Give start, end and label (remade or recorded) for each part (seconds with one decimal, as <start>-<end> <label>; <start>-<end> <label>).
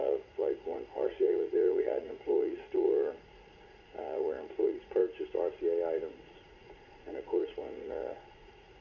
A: 0.0-5.0 remade; 5.0-6.1 recorded; 6.1-8.8 remade